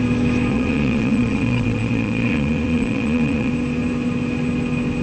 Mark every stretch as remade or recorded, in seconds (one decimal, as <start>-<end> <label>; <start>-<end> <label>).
0.0-0.5 recorded; 0.5-3.5 remade; 3.5-5.0 recorded